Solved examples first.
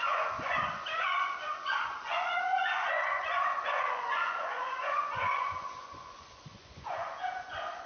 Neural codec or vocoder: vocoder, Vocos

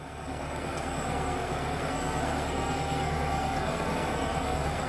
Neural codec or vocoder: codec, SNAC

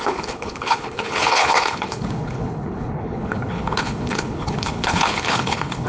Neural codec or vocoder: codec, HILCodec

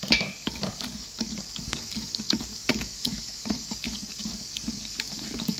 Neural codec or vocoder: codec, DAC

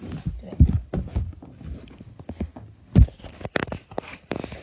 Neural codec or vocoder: none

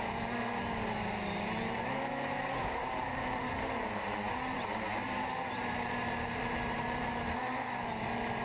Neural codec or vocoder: vocoder, BigVGAN v2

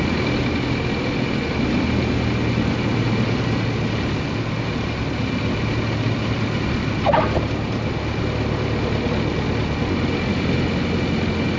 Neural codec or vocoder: none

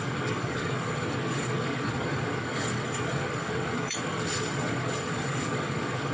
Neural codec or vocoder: codec, DAC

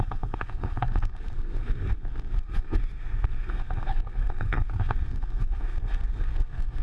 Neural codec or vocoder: codec, SNAC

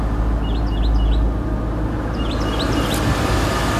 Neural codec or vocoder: none